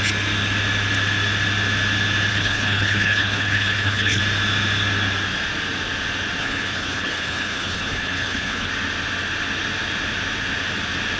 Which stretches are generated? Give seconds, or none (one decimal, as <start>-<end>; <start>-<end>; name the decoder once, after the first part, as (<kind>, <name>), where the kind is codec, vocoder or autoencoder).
2.3-4.2 (codec, HILCodec); 6.4-8.7